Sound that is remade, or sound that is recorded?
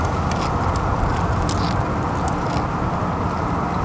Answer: recorded